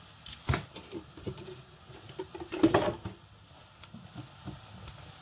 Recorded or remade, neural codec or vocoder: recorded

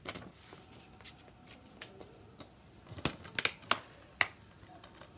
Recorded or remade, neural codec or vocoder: recorded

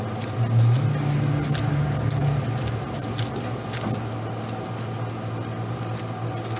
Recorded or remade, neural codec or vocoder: recorded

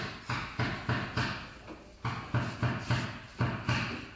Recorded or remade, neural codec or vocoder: recorded